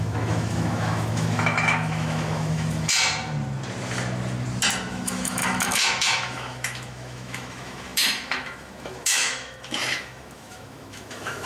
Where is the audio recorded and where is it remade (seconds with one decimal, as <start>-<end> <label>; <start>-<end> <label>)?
0.0-2.9 remade; 2.9-4.9 recorded; 4.9-11.5 remade